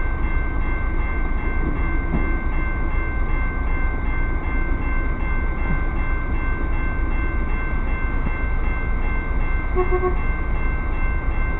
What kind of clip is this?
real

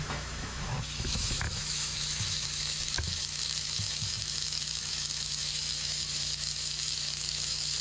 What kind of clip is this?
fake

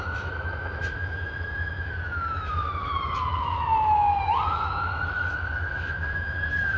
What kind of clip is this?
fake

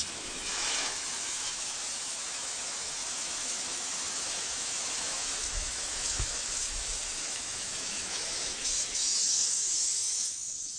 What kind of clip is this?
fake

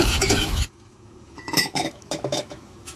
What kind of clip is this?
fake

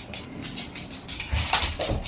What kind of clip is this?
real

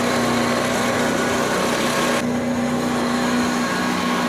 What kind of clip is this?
real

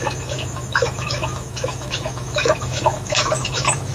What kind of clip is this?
fake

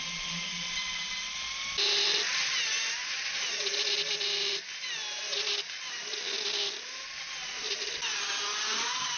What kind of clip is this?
real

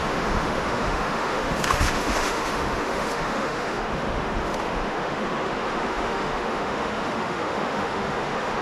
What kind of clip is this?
fake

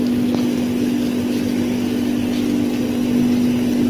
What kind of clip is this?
real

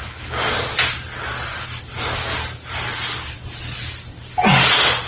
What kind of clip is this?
real